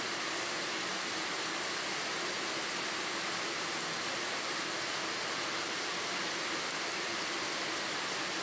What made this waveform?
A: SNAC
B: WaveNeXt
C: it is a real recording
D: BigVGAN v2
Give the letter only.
C